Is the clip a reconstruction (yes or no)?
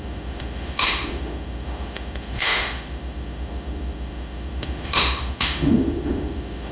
yes